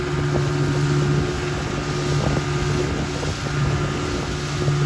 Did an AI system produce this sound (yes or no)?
no